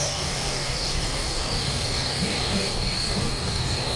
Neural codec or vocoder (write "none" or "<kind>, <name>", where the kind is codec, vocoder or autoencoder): codec, DAC